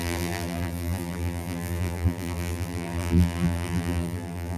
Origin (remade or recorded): remade